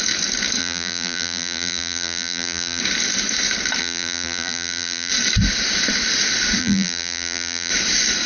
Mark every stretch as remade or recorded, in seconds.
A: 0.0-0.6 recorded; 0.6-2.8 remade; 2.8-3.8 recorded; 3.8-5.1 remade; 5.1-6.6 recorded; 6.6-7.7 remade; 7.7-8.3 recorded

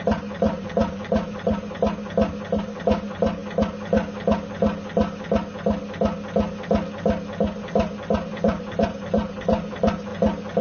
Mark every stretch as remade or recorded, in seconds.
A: 0.0-1.6 remade; 1.6-2.8 recorded; 2.8-3.4 remade; 3.4-8.3 recorded; 8.3-10.1 remade; 10.1-10.6 recorded